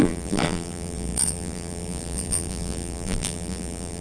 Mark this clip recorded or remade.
remade